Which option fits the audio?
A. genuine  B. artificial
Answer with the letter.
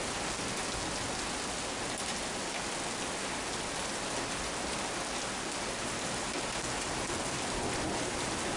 A